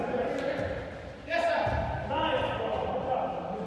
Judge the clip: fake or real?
real